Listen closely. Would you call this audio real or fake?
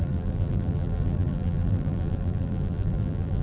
fake